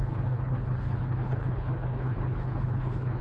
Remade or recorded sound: remade